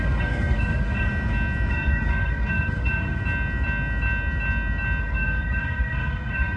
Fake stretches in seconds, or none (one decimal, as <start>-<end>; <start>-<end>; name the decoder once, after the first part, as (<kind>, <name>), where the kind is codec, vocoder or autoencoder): 0.0-1.1 (codec, SNAC); 1.7-3.2; 5.0-6.6